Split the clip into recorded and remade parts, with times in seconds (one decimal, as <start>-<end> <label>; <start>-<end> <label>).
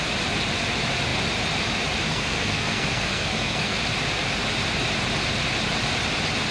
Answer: 0.0-2.1 recorded; 2.1-3.8 remade; 3.8-6.5 recorded